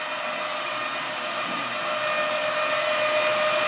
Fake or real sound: real